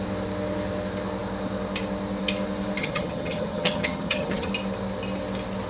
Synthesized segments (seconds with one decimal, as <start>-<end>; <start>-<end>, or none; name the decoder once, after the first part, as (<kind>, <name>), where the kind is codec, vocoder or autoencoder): 2.8-4.5 (vocoder, HiFi-GAN)